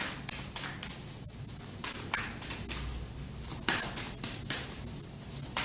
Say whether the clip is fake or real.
real